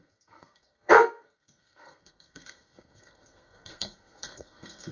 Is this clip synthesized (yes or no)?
yes